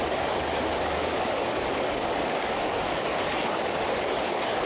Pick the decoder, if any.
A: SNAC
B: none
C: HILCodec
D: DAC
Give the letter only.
D